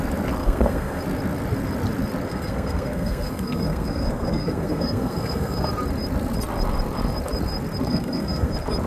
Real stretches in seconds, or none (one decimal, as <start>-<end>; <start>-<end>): 0.0-0.4; 1.0-2.3; 5.6-7.9; 8.5-8.9